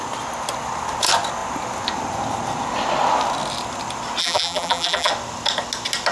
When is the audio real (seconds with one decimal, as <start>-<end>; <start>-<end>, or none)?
0.0-4.2; 5.1-6.1